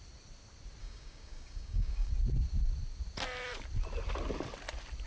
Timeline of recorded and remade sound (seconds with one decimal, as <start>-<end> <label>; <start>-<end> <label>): 0.0-0.8 recorded; 0.8-2.1 remade; 2.1-5.1 recorded